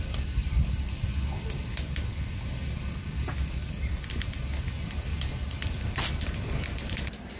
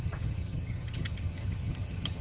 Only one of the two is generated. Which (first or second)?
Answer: second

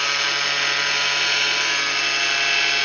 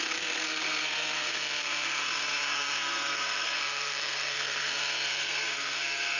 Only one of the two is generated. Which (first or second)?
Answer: second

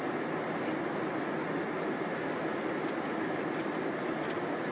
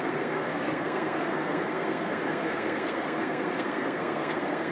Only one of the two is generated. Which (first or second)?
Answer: second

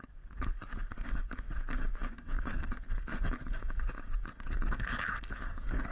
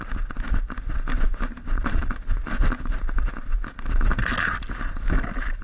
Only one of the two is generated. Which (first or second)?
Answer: first